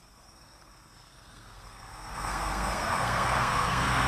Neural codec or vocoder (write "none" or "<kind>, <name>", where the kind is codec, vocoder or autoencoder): codec, SNAC